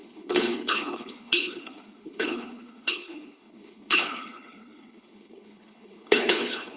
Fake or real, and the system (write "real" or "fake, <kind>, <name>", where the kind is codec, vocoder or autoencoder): fake, codec, HILCodec